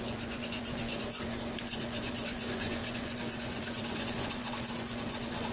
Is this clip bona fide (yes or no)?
no